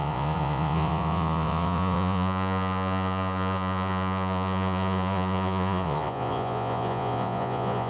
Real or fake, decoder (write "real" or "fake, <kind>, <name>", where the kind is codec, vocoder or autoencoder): fake, vocoder, Vocos